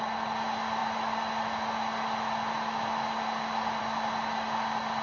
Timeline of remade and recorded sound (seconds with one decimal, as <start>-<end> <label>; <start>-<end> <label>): 0.0-5.0 recorded